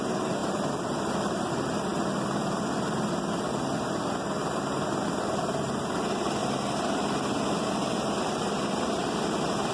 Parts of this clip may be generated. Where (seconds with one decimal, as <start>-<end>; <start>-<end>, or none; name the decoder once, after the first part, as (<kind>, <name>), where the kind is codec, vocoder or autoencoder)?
0.4-1.5 (vocoder, BigVGAN v2)